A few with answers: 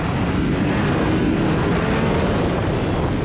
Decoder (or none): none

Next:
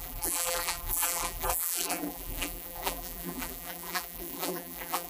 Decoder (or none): vocoder, BigVGAN v2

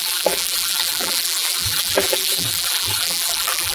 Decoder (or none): vocoder, BigVGAN v2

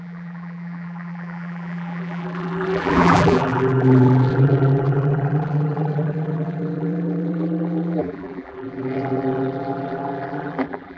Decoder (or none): vocoder, BigVGAN v2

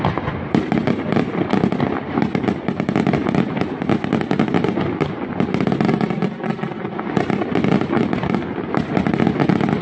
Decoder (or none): none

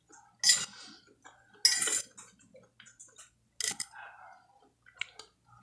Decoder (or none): none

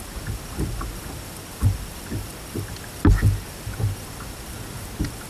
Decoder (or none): none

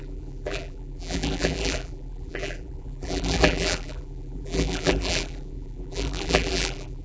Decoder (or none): vocoder, BigVGAN v2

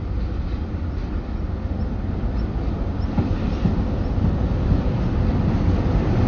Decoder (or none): none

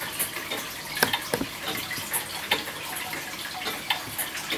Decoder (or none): none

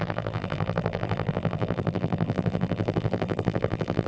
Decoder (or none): vocoder, BigVGAN v2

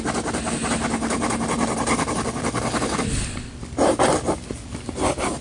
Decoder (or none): none